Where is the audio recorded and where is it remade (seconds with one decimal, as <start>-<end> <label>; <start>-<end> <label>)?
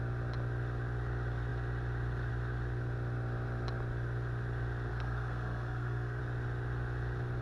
0.0-4.9 recorded; 4.9-6.2 remade; 6.2-7.4 recorded